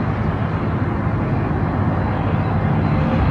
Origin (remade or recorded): recorded